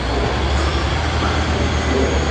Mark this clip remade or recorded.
recorded